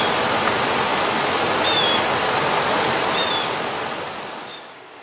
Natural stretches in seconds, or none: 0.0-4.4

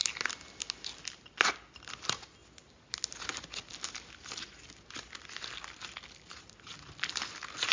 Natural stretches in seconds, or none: 0.0-7.7